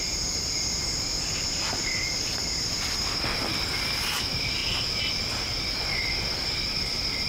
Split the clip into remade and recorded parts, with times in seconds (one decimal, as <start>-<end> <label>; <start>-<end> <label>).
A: 0.0-4.6 remade; 4.6-5.1 recorded; 5.1-7.3 remade